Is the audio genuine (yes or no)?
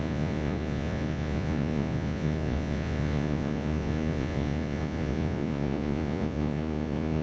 no